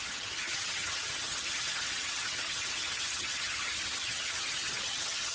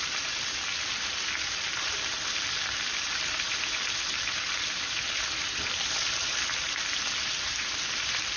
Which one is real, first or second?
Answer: second